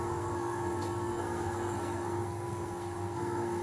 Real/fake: fake